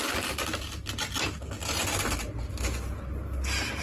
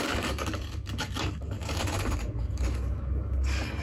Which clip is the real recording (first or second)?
first